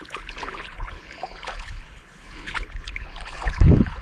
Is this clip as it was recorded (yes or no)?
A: no